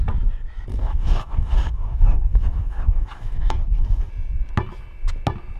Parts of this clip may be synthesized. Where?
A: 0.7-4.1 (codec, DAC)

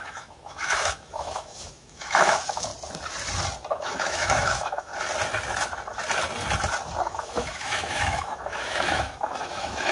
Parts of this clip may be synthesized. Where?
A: 0.0-2.7 (autoencoder, DAC-VAE); 3.7-4.9; 7.0-9.9

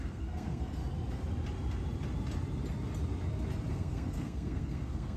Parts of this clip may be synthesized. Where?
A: 0.0-0.8 (codec, SNAC); 3.7-5.2

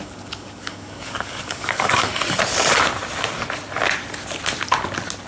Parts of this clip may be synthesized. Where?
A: 0.0-2.1 (codec, DAC)

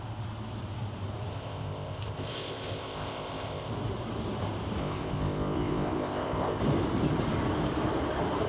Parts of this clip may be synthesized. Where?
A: 1.3-3.7 (codec, ZipCodec); 4.8-6.6

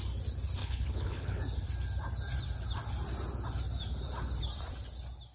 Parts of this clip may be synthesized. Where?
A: 0.6-1.4 (codec, HILCodec)

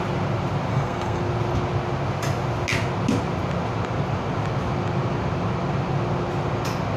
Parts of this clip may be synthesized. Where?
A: 0.7-1.2 (codec, SNAC)

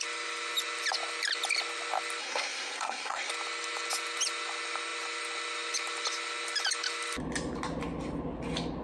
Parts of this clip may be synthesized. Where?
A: 2.2-3.3 (codec, SNAC)